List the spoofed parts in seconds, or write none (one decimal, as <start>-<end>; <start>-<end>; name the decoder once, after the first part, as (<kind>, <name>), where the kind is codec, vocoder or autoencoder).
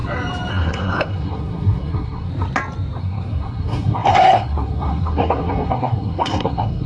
0.5-2.3 (codec, SNAC); 3.0-6.9